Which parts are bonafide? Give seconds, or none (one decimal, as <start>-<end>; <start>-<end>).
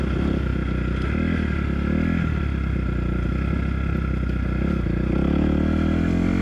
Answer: 0.0-6.4